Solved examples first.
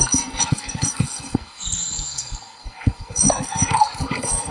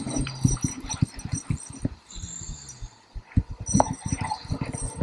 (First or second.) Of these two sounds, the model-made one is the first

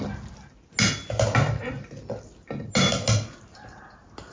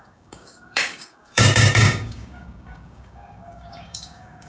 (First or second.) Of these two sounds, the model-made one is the second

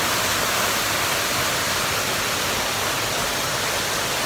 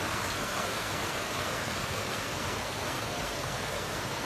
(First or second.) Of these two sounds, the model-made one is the second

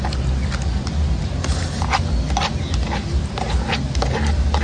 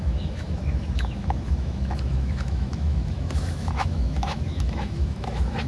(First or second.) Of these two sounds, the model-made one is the second